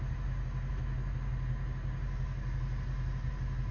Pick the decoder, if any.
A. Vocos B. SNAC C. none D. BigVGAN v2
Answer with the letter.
C